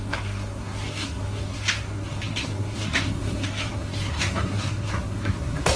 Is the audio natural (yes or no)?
no